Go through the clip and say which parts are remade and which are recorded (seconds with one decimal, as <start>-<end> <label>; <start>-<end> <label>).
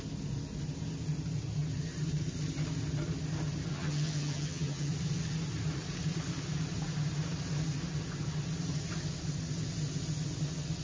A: 0.0-3.7 recorded; 3.7-4.9 remade; 4.9-10.8 recorded